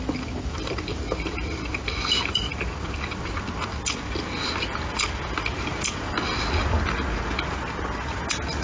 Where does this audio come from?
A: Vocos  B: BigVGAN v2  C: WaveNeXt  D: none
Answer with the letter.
D